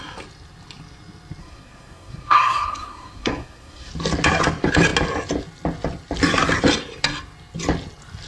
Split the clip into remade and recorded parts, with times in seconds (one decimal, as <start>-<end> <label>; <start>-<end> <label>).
0.0-1.4 recorded; 1.4-3.9 remade; 3.9-8.3 recorded